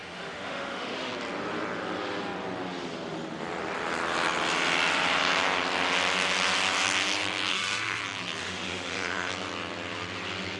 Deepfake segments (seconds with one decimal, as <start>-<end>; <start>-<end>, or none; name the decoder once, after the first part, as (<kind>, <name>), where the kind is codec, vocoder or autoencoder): 0.0-1.1 (autoencoder, DAC-VAE); 7.5-8.0; 8.4-9.3